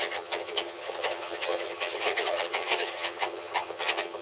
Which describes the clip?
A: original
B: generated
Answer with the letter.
B